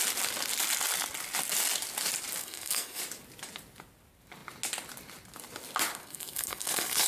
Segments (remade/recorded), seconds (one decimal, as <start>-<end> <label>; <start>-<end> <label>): 0.0-2.4 recorded; 2.4-3.0 remade; 3.0-6.0 recorded; 6.0-7.1 remade